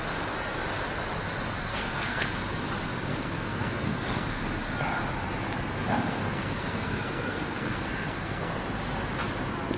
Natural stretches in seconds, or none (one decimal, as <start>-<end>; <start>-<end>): 0.0-1.7; 2.4-3.1; 4.4-6.1; 8.6-9.8